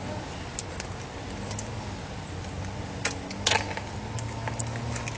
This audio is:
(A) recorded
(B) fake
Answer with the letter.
A